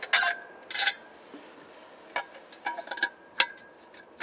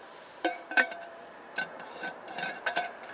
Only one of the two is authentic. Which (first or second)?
first